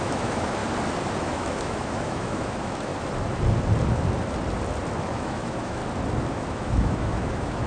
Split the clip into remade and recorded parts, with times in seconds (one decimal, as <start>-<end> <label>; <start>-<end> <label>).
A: 0.0-0.6 remade; 0.6-1.2 recorded; 1.2-2.9 remade; 2.9-5.0 recorded; 5.0-5.8 remade; 5.8-6.3 recorded; 6.3-7.7 remade